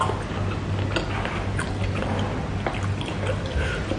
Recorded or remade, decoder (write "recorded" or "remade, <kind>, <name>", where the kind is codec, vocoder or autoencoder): recorded